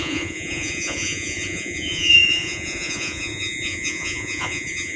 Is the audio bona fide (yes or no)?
no